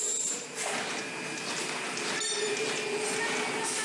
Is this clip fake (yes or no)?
no